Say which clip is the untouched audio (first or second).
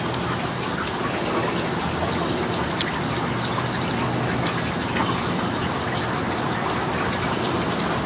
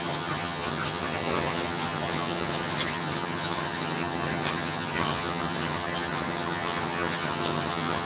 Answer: first